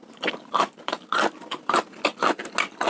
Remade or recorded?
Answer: recorded